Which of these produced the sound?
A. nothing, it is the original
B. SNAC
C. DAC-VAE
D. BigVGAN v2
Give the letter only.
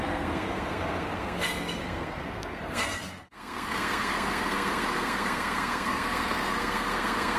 B